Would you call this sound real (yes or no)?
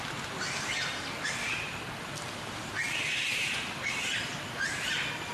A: yes